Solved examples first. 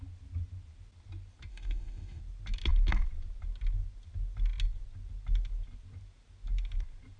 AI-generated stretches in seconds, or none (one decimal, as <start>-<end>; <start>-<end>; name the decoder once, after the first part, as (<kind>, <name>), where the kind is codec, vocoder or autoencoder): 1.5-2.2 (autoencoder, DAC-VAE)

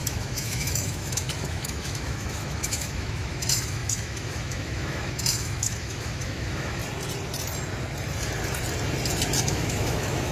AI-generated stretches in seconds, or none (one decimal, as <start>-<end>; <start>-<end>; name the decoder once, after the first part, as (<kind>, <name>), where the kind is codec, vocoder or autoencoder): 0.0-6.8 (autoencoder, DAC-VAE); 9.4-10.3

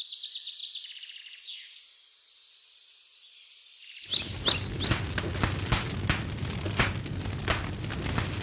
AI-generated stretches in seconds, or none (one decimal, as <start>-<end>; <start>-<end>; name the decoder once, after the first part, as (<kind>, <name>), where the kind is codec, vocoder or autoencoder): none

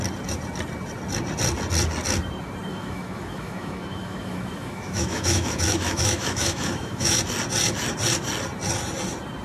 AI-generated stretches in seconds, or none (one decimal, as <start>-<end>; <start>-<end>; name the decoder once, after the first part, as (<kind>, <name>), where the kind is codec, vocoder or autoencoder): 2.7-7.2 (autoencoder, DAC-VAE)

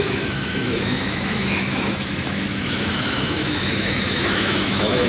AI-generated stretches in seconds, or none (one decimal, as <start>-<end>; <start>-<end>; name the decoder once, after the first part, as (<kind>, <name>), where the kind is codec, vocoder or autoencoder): 0.0-5.1 (autoencoder, DAC-VAE)

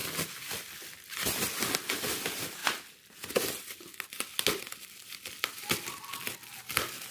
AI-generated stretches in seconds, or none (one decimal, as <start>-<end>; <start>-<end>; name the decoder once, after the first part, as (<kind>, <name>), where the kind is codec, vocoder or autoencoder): none